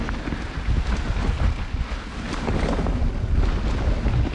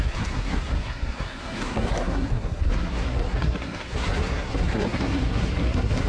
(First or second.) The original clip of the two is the first